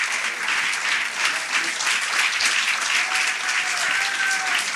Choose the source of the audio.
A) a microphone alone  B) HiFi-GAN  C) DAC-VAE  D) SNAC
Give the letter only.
A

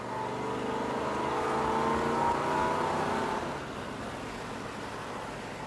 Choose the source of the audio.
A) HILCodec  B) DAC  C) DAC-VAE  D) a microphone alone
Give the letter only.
D